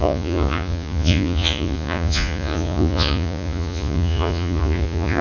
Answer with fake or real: fake